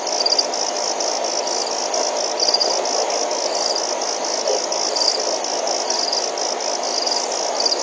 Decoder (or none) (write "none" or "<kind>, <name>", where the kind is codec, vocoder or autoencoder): none